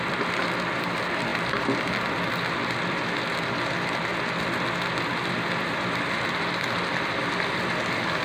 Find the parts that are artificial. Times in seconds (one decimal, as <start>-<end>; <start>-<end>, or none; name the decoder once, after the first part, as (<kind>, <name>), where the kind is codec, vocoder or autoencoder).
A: 0.0-1.3 (vocoder, BigVGAN v2); 2.3-4.1; 7.5-8.2